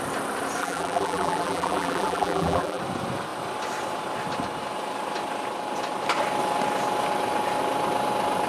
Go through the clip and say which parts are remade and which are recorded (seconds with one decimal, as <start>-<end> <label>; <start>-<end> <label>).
0.0-0.6 recorded; 0.6-2.8 remade; 2.8-8.5 recorded